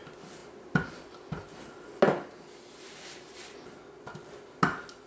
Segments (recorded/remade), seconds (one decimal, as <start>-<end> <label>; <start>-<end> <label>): 0.0-5.1 recorded